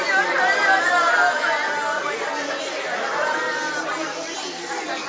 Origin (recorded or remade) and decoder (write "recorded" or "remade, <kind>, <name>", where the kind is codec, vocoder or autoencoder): recorded